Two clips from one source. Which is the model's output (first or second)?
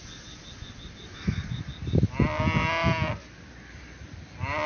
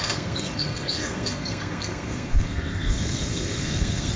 second